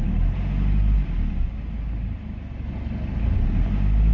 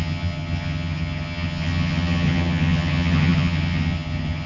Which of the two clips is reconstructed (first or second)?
second